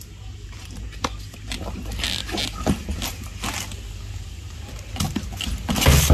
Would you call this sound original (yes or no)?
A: yes